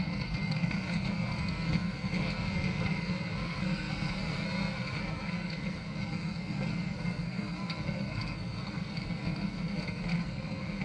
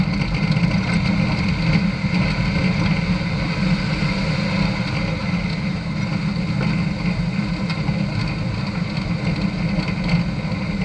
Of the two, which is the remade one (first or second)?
first